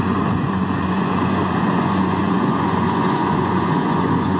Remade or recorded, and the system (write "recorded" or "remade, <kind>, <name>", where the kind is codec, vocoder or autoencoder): remade, vocoder, Vocos